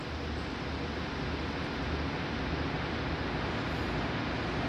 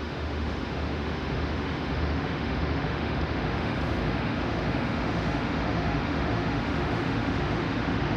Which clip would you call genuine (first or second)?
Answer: first